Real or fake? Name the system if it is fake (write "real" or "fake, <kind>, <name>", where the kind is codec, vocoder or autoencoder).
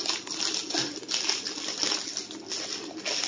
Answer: real